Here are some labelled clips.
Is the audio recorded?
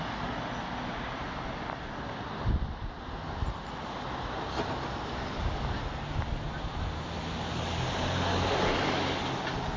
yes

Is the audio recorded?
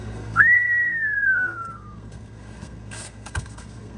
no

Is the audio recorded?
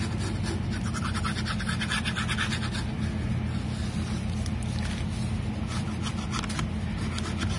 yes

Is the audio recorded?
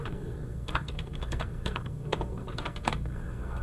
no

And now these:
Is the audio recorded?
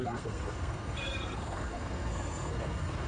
no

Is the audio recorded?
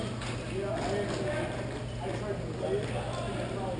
yes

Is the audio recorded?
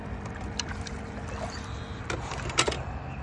yes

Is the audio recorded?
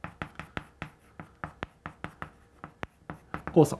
yes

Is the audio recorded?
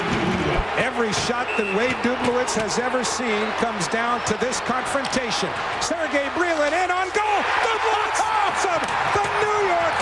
yes